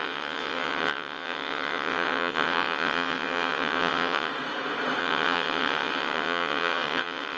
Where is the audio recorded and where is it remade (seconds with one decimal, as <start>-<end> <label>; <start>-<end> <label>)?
0.0-4.3 remade; 4.3-5.0 recorded; 5.0-7.4 remade